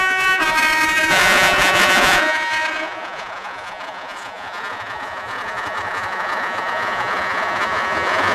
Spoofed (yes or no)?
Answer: yes